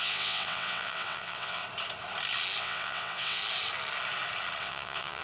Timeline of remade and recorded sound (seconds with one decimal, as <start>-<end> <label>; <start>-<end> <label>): 0.0-1.6 remade; 1.6-2.6 recorded; 2.6-3.4 remade; 3.4-4.6 recorded; 4.6-5.2 remade